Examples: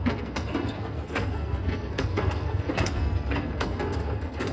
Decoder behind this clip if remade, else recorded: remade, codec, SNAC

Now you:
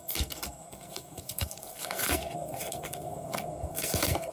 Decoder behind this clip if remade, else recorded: remade, codec, SNAC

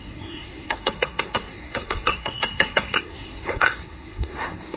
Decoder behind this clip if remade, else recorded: remade, codec, SNAC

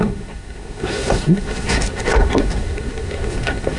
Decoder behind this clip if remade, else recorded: remade, codec, SNAC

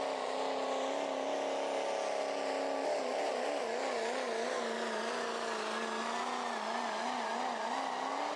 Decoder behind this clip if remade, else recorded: recorded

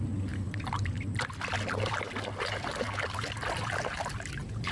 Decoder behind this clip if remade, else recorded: recorded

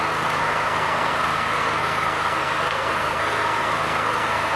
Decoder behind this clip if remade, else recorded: remade, codec, SNAC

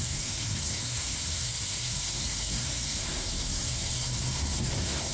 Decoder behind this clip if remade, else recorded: remade, codec, SNAC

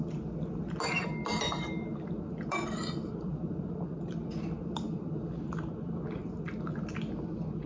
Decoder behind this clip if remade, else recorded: recorded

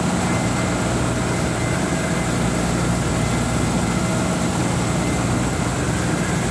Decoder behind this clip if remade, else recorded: recorded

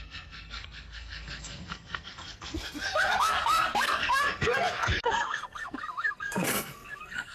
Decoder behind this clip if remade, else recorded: remade, codec, SNAC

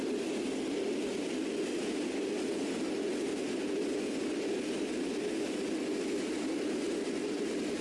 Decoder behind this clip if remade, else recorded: recorded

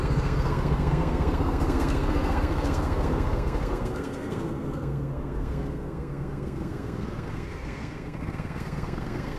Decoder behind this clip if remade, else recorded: remade, codec, SNAC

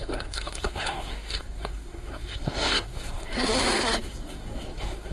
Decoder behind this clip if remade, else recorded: remade, codec, SNAC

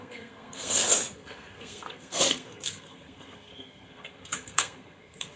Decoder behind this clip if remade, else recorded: remade, codec, SNAC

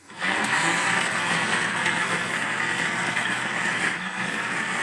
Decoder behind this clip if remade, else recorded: remade, codec, SNAC